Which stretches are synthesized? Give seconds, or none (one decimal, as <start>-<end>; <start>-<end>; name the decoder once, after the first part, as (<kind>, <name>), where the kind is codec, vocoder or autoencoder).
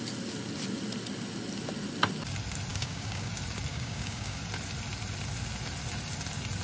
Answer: 2.7-3.3 (codec, DAC); 3.7-4.4